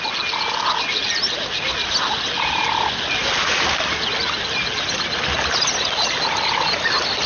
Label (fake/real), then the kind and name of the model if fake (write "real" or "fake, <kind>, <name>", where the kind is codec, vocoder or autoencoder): real